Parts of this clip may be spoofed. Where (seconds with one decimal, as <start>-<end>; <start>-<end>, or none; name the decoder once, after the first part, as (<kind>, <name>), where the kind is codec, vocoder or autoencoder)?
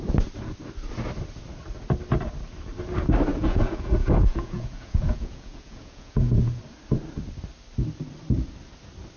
3.3-6.6 (vocoder, Vocos)